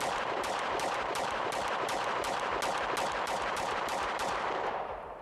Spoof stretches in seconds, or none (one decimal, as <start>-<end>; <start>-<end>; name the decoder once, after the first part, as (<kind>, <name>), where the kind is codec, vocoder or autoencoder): 0.0-2.5 (vocoder, BigVGAN v2); 3.1-5.2